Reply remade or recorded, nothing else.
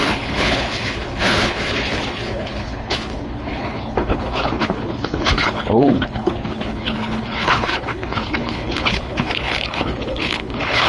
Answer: remade